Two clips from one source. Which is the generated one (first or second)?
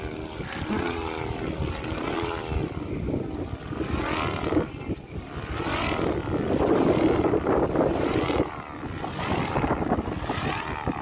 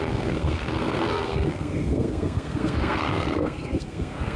second